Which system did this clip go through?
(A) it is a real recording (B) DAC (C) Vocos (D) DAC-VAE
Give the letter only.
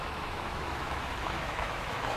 D